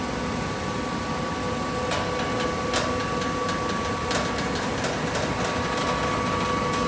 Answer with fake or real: real